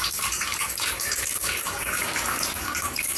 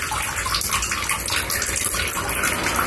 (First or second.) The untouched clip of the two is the second